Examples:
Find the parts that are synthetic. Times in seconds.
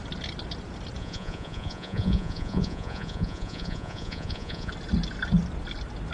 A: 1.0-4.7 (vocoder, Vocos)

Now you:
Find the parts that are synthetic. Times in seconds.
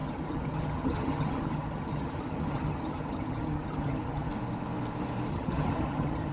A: 0.0-4.3 (vocoder, HiFi-GAN); 5.3-6.3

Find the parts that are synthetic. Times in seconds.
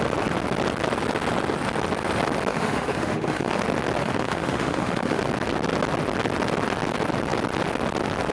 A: 2.5-3.6 (autoencoder, DAC-VAE); 4.0-5.2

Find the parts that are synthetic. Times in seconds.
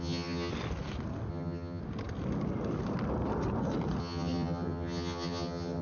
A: 0.0-0.5 (vocoder, HiFi-GAN); 1.3-1.8; 4.0-5.8